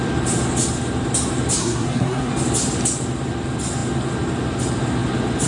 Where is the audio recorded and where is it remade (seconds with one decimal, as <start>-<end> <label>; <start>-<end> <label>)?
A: 0.0-1.6 recorded; 1.6-2.3 remade; 2.3-5.5 recorded